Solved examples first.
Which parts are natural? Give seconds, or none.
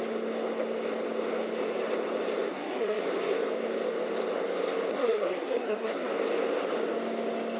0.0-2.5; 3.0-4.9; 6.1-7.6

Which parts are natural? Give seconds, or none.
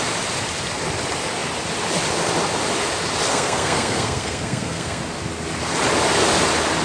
0.0-3.3; 5.0-6.8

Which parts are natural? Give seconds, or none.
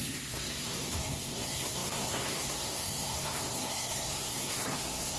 none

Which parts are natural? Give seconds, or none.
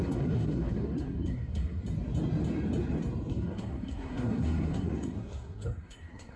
1.8-3.3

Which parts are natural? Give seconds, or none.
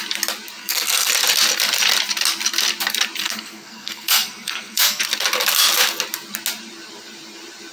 0.0-0.6; 1.1-3.2; 5.0-7.7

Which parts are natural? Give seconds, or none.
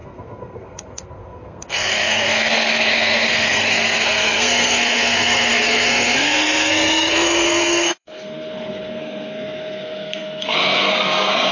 none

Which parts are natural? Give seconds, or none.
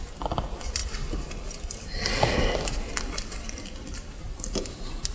0.0-5.1